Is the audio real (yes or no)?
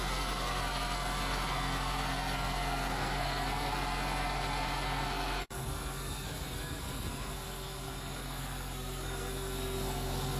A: no